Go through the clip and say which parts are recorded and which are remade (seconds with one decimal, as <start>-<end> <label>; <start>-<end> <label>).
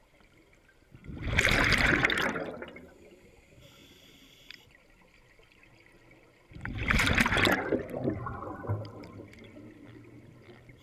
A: 0.0-10.8 recorded